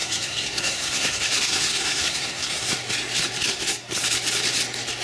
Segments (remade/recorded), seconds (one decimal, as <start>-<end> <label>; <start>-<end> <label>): 0.0-2.7 remade; 2.7-3.5 recorded; 3.5-4.0 remade; 4.0-5.0 recorded